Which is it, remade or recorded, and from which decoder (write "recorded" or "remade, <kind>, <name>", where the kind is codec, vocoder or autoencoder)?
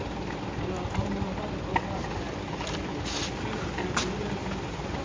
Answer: recorded